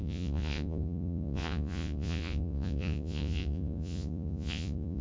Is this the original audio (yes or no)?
no